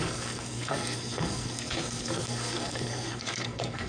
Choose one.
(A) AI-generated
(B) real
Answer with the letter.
A